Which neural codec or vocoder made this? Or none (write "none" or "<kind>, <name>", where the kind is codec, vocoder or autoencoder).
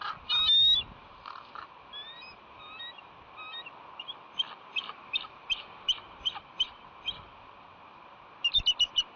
none